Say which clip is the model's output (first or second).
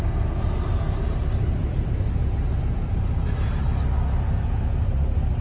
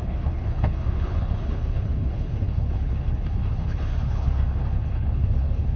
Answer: second